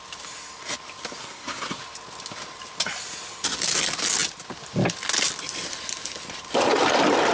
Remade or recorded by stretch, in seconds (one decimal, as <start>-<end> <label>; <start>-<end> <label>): 0.0-1.2 recorded; 1.2-1.8 remade; 1.8-7.3 recorded